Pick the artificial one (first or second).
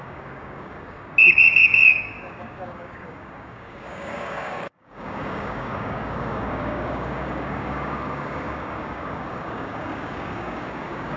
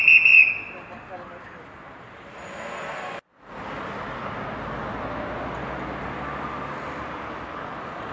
first